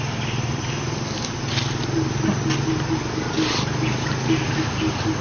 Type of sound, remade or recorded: recorded